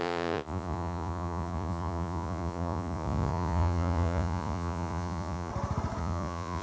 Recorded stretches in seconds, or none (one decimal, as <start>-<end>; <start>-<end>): 5.5-6.0